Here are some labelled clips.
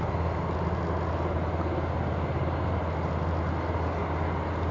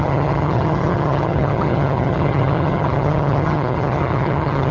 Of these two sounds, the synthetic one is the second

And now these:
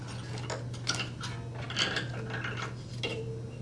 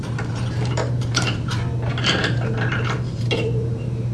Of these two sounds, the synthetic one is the second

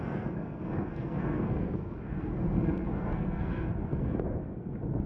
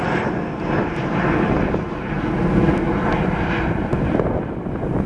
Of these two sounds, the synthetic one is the first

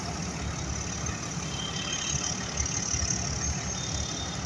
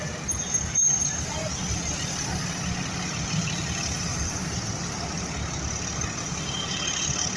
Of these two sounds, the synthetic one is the second